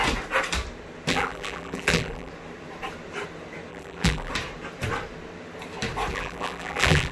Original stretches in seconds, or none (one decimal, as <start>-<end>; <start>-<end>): 0.0-1.1; 2.3-3.7; 4.3-6.1